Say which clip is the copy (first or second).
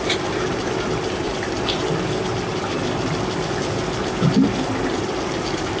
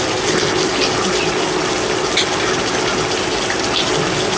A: first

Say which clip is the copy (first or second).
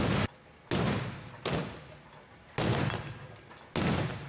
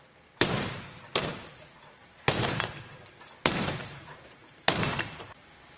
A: second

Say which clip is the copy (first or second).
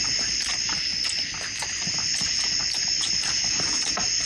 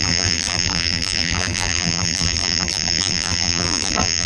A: second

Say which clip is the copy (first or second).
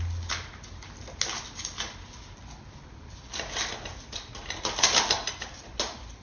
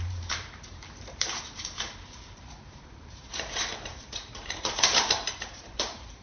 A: second